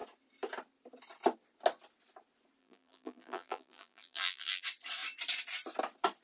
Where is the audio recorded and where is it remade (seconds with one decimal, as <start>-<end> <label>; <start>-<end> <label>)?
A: 0.0-2.6 recorded; 2.6-4.6 remade; 4.6-6.2 recorded